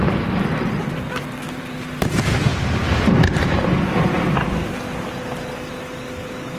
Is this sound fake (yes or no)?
no